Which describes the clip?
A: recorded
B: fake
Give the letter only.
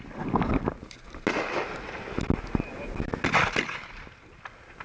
A